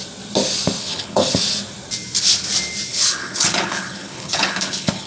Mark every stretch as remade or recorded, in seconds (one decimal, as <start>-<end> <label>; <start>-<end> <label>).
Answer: 0.0-0.8 recorded; 0.8-1.4 remade; 1.4-2.9 recorded; 2.9-5.1 remade